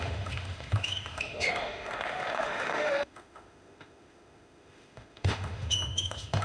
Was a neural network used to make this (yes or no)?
yes